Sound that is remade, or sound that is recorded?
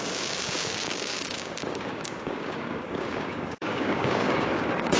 remade